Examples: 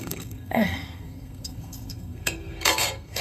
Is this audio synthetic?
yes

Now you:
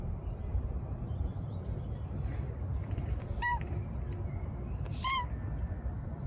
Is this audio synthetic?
yes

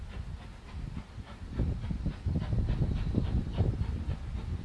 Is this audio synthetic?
no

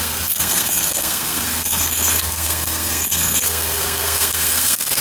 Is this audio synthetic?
yes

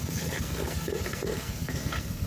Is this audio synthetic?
yes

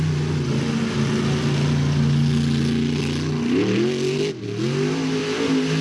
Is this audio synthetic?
no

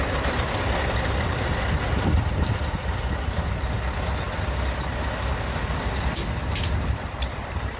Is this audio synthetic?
no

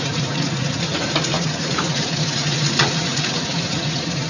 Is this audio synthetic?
yes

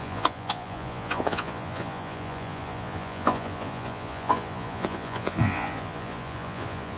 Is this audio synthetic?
yes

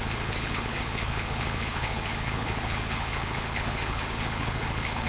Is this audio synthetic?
yes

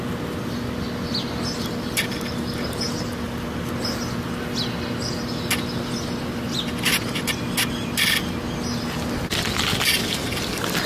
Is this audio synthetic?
no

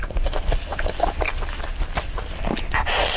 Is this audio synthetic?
no